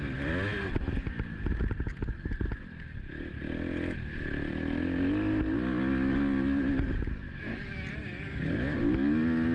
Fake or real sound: real